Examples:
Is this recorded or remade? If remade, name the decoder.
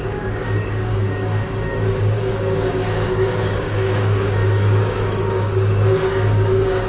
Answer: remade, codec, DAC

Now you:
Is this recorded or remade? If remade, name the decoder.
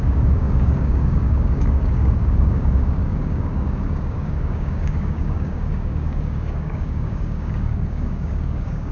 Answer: remade, codec, DAC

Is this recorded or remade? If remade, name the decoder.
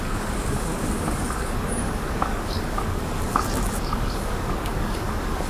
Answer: remade, codec, DAC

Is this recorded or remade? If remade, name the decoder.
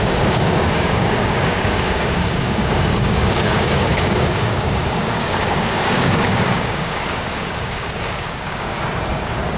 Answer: remade, codec, DAC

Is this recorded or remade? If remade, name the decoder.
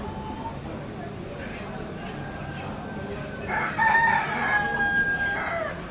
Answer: recorded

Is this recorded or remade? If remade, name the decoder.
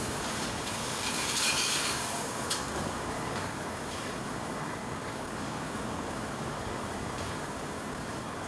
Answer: remade, codec, DAC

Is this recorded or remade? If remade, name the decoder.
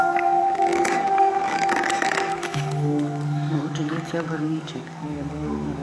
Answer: remade, codec, DAC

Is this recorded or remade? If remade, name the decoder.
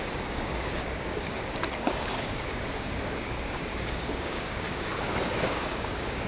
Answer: remade, codec, DAC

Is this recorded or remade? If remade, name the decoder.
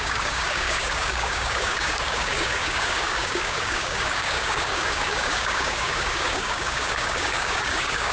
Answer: remade, codec, DAC